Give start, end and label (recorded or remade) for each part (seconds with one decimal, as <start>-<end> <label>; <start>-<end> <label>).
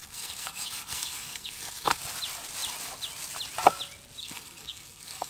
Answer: 0.0-2.0 remade; 2.0-4.2 recorded; 4.2-5.3 remade